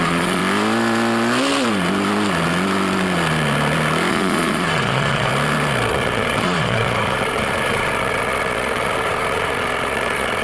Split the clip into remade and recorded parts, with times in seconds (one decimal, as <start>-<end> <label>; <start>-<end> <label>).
0.0-0.4 remade; 0.4-4.1 recorded; 4.1-5.3 remade; 5.3-5.9 recorded; 5.9-10.4 remade